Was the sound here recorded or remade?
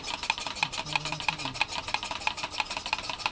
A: recorded